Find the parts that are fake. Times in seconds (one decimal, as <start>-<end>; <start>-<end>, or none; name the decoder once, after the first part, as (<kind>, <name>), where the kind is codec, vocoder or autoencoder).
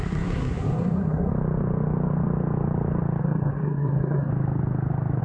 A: 0.0-1.3 (codec, SNAC); 3.2-4.3